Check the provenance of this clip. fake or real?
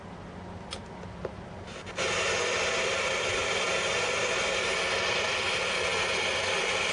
real